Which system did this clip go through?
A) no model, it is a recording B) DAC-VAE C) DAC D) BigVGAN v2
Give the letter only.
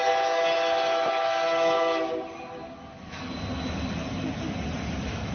A